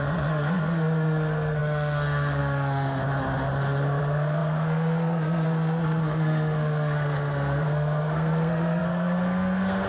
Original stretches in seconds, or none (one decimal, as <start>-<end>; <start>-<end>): 3.0-4.0